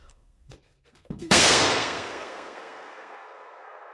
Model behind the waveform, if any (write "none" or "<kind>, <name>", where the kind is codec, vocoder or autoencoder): codec, SNAC